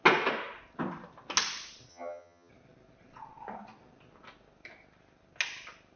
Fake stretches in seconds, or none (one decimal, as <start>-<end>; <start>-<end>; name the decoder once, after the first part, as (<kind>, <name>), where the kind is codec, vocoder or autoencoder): 1.9-2.5 (vocoder, HiFi-GAN)